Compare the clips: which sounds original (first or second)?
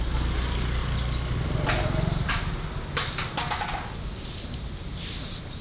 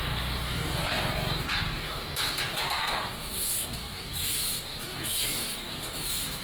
first